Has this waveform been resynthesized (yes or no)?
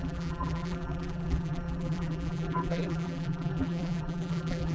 yes